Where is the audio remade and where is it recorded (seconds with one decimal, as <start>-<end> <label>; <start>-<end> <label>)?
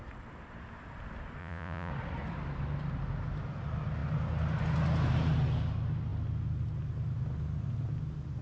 0.0-1.4 recorded; 1.4-1.9 remade; 1.9-8.4 recorded